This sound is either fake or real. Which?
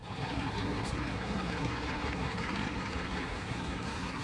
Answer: fake